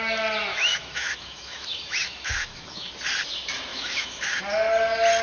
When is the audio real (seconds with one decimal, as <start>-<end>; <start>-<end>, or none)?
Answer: 0.0-0.5; 2.9-3.7; 4.4-5.2

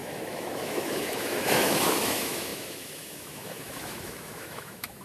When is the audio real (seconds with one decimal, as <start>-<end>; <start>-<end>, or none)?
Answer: none